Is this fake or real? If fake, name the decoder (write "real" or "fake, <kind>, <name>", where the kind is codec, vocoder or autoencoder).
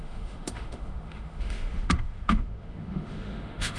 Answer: fake, autoencoder, DAC-VAE